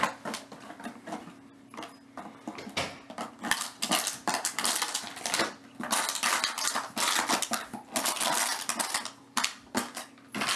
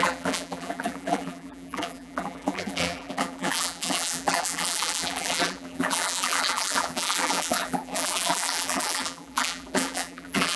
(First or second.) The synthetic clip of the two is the second